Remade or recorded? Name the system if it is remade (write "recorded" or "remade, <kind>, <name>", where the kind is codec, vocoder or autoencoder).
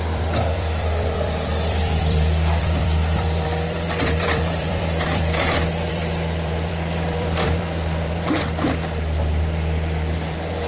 remade, vocoder, BigVGAN v2